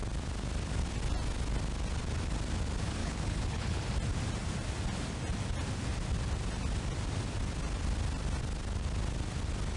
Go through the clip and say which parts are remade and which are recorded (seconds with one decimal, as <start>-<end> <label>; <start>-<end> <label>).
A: 0.0-3.0 recorded; 3.0-3.8 remade; 3.8-9.8 recorded